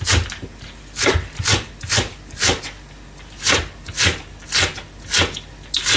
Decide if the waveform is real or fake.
real